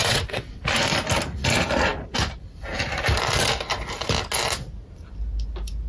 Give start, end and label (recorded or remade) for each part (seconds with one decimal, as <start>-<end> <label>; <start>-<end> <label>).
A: 0.0-0.6 remade; 0.6-5.9 recorded